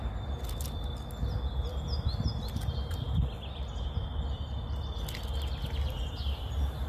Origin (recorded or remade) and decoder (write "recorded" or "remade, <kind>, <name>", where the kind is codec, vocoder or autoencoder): recorded